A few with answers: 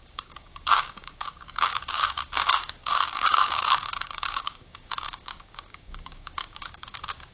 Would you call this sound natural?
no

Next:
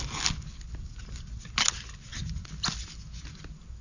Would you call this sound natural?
yes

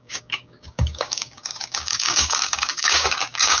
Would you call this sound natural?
no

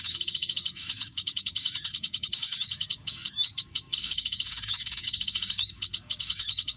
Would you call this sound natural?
no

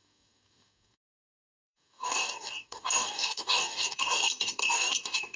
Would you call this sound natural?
no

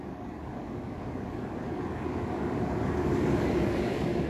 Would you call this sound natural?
no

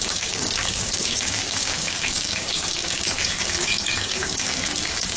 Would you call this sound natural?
no